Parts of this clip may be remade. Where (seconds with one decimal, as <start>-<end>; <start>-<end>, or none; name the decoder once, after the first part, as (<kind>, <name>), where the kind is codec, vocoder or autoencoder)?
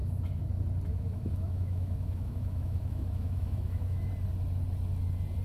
0.0-0.5 (autoencoder, DAC-VAE); 0.9-4.1